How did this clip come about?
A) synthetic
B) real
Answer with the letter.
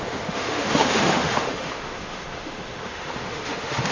A